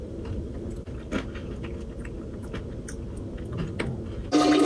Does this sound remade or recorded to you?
recorded